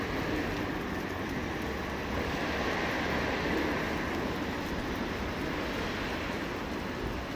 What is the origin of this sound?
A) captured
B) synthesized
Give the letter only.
A